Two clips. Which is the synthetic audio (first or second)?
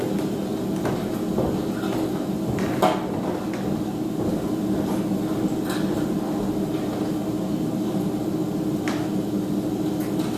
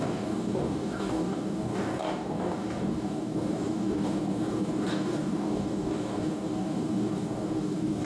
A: second